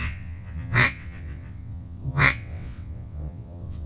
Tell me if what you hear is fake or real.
fake